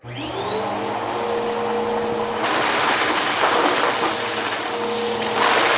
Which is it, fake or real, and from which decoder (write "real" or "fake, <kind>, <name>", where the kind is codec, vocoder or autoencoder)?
real